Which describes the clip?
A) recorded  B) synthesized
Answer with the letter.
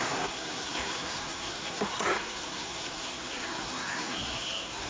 B